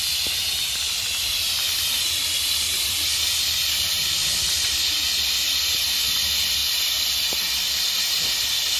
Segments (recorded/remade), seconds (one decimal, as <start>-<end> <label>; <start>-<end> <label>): 0.0-6.6 remade; 6.6-8.0 recorded; 8.0-8.8 remade